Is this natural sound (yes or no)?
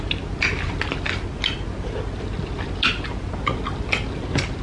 yes